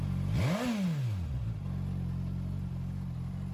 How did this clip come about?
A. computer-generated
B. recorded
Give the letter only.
B